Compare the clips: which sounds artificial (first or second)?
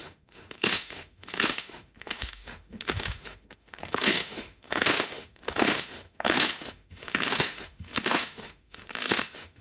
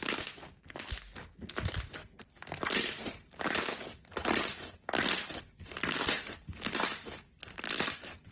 first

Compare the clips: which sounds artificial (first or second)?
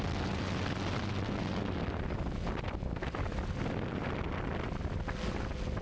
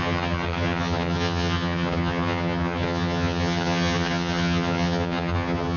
second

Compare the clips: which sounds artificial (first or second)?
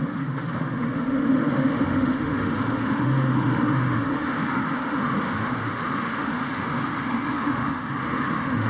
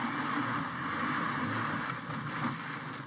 first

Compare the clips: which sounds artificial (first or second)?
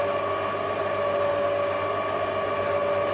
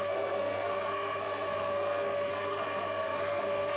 second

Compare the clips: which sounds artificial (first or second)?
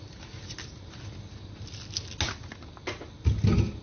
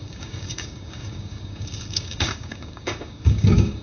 second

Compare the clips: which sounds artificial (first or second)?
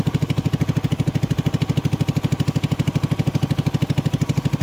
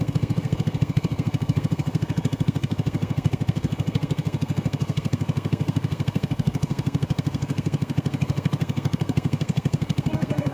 second